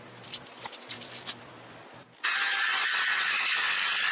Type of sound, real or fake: real